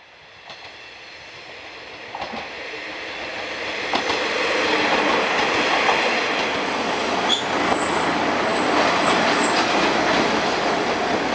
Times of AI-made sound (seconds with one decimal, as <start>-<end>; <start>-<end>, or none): none